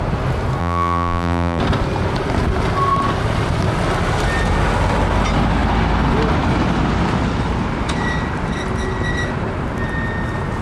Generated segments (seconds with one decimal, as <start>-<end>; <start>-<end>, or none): 0.6-1.6